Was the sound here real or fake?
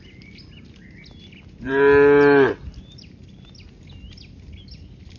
real